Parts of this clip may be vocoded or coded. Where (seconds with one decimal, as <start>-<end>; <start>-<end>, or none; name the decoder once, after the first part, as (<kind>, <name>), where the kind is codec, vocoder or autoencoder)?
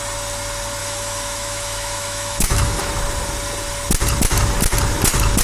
0.8-2.8 (autoencoder, DAC-VAE)